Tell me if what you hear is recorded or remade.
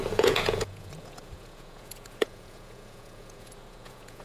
remade